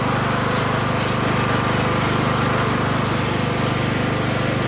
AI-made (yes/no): no